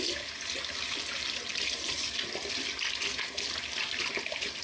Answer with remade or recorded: recorded